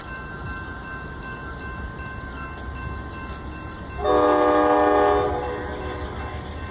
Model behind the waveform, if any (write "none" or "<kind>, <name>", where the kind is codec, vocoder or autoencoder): none